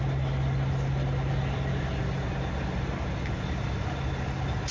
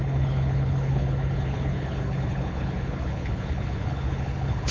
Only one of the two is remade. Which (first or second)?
second